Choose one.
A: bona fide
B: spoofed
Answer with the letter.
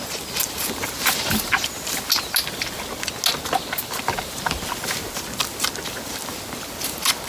A